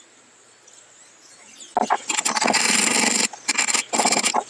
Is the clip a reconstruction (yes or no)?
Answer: no